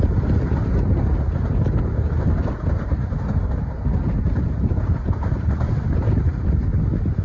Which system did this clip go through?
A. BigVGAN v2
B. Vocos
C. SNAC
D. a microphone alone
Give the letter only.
A